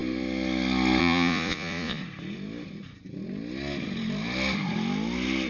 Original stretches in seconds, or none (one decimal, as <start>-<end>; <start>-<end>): 0.0-1.0; 2.0-5.5